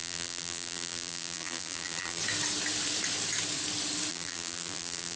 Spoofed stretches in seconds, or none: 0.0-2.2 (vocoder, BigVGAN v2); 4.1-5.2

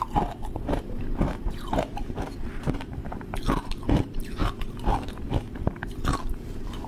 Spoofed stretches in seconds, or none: 0.0-4.4 (vocoder, BigVGAN v2); 4.9-5.8; 6.3-6.9

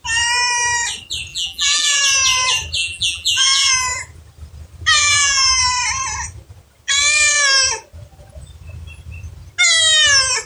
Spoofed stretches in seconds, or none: 1.3-2.0 (vocoder, BigVGAN v2); 2.8-3.7; 5.0-5.6

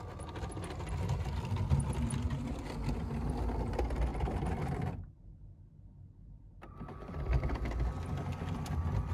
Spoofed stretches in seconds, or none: 4.1-7.8 (vocoder, BigVGAN v2)

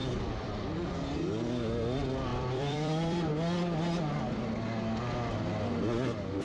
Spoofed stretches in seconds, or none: 0.0-0.6 (vocoder, BigVGAN v2); 2.3-3.3